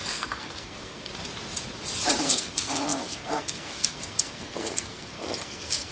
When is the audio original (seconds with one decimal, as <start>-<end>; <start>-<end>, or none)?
1.1-2.2